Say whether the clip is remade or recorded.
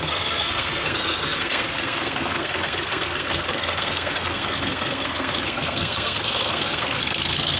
remade